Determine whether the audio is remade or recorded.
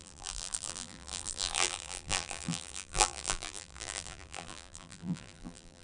remade